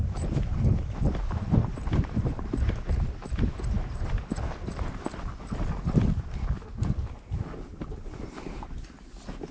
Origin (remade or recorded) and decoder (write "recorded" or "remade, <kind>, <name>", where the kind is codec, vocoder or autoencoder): recorded